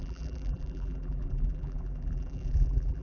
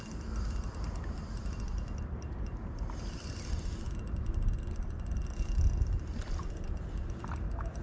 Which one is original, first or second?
second